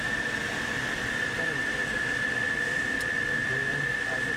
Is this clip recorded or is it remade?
recorded